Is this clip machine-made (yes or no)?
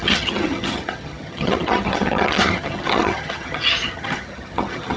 yes